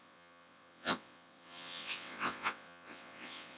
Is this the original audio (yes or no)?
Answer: no